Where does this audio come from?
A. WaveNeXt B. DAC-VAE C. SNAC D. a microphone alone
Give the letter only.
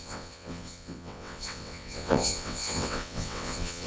A